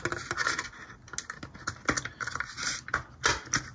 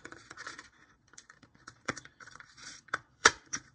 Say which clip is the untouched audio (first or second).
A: first